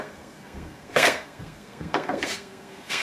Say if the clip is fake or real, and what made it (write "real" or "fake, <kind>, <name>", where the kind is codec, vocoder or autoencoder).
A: fake, codec, SNAC